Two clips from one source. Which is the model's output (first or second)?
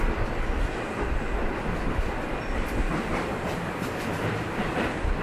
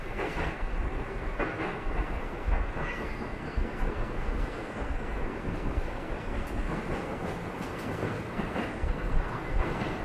second